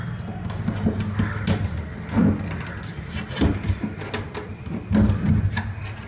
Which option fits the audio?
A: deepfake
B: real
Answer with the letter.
B